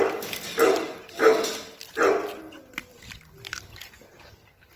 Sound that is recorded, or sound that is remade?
recorded